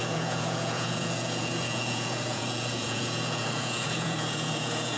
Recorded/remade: remade